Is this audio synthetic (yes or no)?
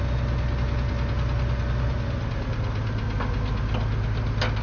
no